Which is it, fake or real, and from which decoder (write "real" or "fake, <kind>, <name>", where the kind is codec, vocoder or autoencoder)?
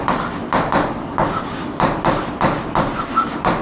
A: fake, vocoder, BigVGAN v2